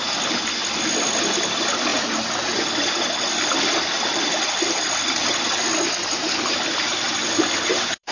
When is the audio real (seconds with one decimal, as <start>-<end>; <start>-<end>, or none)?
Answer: 0.0-1.9; 5.6-7.1